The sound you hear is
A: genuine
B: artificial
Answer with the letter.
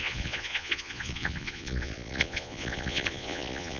B